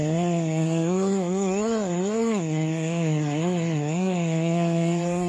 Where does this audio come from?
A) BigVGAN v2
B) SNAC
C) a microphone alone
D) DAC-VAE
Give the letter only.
B